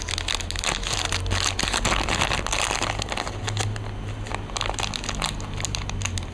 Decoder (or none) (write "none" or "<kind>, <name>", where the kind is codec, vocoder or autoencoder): none